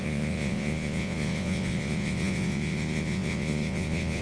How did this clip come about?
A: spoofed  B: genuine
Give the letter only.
A